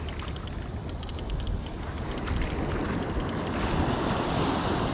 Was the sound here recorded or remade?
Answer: recorded